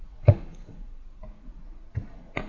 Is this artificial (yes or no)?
yes